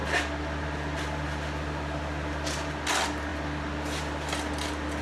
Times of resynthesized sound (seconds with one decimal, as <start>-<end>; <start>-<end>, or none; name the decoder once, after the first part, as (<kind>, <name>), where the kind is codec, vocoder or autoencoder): none